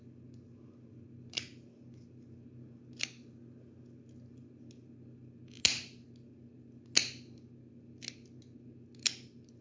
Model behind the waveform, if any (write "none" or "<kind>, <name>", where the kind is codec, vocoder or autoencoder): none